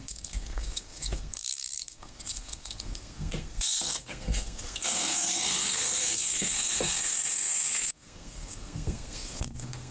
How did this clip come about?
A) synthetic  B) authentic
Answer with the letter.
A